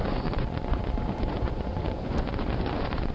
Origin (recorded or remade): remade